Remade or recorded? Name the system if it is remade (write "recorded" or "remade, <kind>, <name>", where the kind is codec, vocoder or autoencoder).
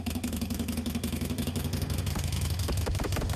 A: remade, autoencoder, DAC-VAE